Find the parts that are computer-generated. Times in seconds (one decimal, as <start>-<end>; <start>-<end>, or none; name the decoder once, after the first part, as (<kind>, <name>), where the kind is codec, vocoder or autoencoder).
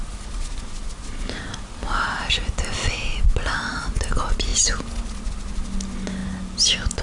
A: none